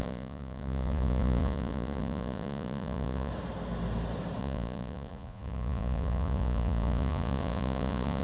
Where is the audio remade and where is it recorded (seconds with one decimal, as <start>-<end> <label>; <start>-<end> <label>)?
0.0-3.3 remade; 3.3-4.4 recorded; 4.4-8.2 remade